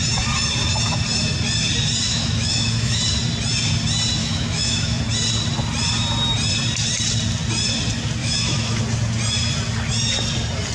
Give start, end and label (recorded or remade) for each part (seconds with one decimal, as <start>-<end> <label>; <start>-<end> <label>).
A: 0.0-2.1 recorded; 2.1-3.0 remade; 3.0-4.2 recorded; 4.2-5.0 remade; 5.0-8.2 recorded; 8.2-8.8 remade; 8.8-10.7 recorded